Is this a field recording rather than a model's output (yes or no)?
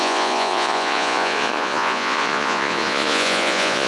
no